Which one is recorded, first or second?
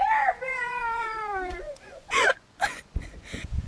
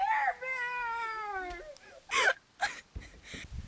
second